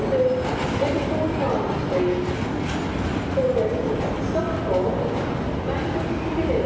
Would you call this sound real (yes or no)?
yes